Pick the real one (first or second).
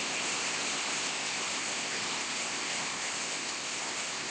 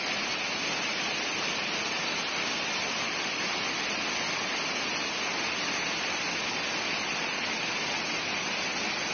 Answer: second